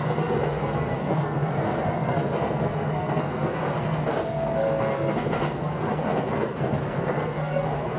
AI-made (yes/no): yes